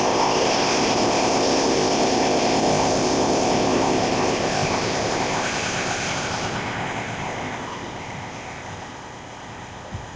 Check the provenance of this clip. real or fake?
fake